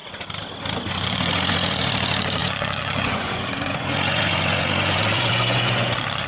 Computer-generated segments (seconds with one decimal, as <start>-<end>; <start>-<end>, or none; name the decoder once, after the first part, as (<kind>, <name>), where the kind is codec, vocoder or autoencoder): 0.9-6.3 (vocoder, Vocos)